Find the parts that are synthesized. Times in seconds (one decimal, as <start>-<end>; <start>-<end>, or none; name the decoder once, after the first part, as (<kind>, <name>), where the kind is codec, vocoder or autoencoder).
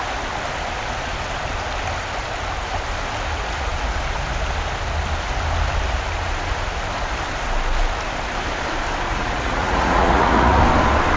9.1-10.6 (vocoder, Vocos)